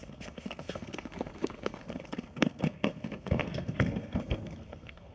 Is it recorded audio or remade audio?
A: remade